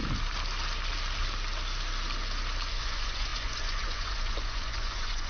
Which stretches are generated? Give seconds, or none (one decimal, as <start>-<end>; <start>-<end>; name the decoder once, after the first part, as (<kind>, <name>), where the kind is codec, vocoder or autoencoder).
2.7-5.3 (vocoder, Vocos)